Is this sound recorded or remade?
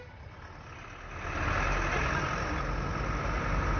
recorded